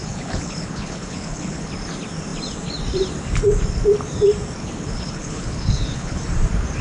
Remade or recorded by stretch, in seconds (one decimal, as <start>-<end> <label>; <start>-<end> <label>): 0.0-1.7 remade; 1.7-4.6 recorded; 4.6-6.2 remade; 6.2-6.8 recorded